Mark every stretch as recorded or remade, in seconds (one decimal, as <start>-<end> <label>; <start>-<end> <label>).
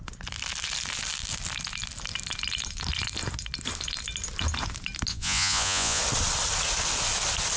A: 0.0-5.1 recorded; 5.1-6.0 remade; 6.0-7.6 recorded